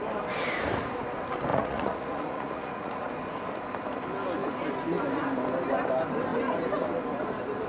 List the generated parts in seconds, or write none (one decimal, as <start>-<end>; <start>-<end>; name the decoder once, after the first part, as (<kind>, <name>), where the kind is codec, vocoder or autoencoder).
1.5-3.1 (vocoder, Vocos)